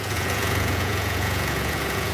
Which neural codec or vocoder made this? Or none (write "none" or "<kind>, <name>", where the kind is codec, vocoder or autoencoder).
vocoder, Vocos